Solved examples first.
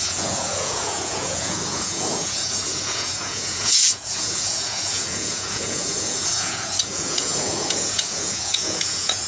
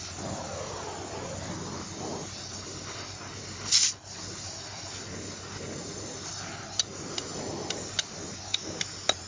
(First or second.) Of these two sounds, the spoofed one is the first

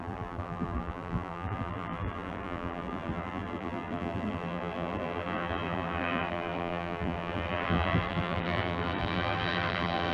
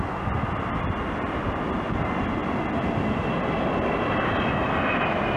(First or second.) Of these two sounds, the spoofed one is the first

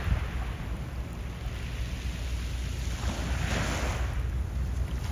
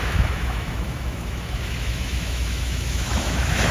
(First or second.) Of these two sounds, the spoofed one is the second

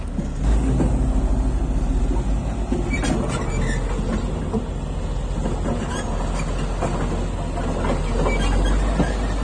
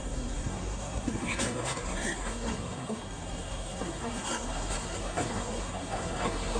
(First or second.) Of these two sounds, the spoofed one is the second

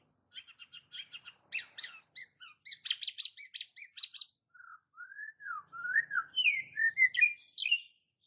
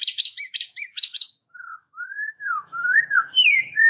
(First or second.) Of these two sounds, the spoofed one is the second